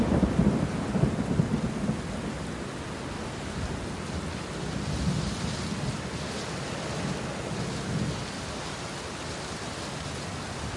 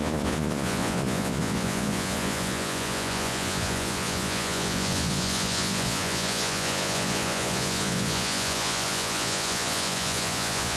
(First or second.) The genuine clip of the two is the first